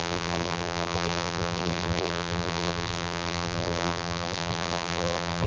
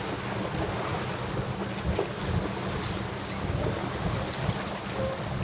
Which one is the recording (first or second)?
second